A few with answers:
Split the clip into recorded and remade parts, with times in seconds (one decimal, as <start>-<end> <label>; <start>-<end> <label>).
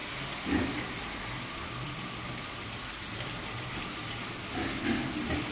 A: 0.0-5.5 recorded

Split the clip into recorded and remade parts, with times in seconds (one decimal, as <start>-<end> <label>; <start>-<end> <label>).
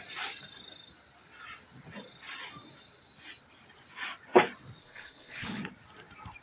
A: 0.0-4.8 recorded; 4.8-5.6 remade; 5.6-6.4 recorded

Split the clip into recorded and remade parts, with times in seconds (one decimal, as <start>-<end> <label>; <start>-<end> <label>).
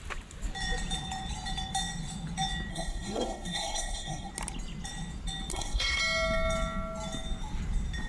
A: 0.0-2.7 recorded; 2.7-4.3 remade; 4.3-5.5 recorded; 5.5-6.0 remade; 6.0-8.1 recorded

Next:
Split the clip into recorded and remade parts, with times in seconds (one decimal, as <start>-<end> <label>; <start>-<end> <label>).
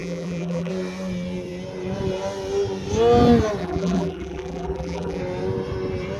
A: 0.0-0.7 remade; 0.7-3.6 recorded; 3.6-5.2 remade; 5.2-6.2 recorded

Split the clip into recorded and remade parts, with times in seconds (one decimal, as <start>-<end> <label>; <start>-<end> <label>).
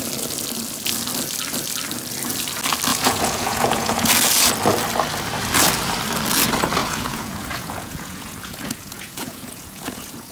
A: 0.0-2.9 recorded; 2.9-4.1 remade; 4.1-6.8 recorded; 6.8-10.3 remade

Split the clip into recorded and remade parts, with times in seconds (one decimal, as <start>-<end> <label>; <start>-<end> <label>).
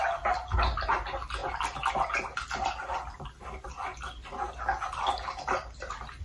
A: 0.0-6.2 recorded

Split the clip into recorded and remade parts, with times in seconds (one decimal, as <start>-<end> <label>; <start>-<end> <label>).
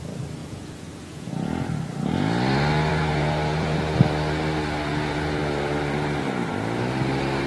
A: 0.0-0.4 recorded; 0.4-1.3 remade; 1.3-2.9 recorded; 2.9-3.8 remade; 3.8-4.9 recorded; 4.9-5.4 remade; 5.4-7.5 recorded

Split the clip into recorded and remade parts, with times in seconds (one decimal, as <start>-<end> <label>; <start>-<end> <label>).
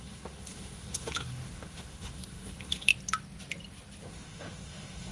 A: 0.0-2.9 remade; 2.9-4.0 recorded; 4.0-5.1 remade